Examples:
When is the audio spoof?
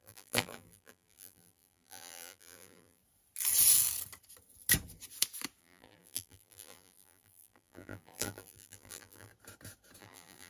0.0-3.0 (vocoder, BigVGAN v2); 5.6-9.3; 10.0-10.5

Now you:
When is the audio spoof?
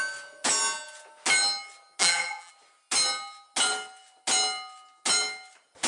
2.0-2.5 (vocoder, BigVGAN v2)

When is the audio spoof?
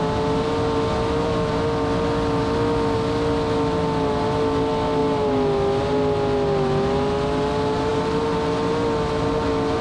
none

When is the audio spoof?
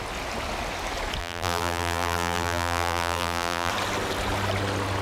1.2-3.7 (vocoder, BigVGAN v2)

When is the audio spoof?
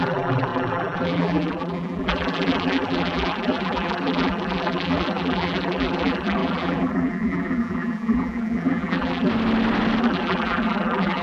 0.0-9.3 (vocoder, BigVGAN v2); 10.0-11.2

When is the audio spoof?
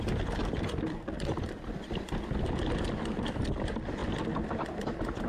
0.4-2.6 (vocoder, BigVGAN v2); 4.0-5.3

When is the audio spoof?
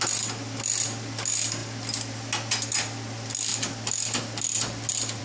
none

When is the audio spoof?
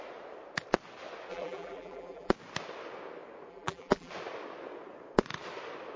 1.3-2.3 (vocoder, BigVGAN v2); 3.5-4.1